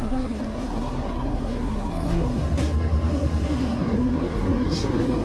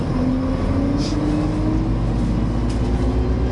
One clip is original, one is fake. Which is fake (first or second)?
first